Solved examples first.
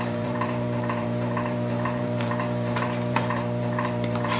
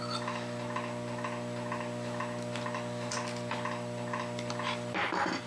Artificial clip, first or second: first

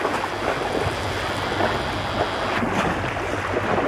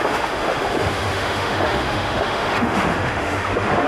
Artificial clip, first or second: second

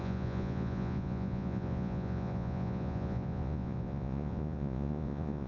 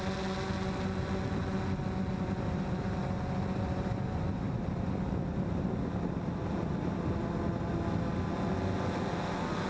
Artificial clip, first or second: first